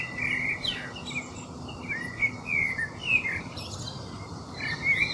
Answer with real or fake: real